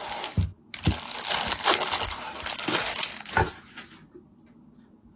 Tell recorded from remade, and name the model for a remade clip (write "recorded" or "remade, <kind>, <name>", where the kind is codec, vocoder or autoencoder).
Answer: recorded